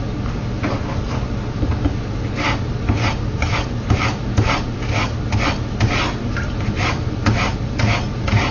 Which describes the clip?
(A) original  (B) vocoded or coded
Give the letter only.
A